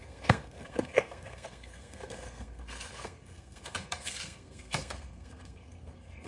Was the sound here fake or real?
fake